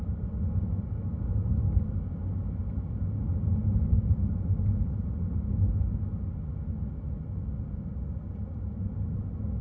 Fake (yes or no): no